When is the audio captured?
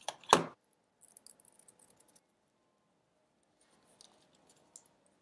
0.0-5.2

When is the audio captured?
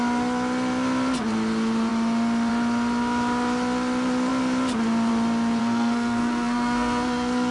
0.0-5.6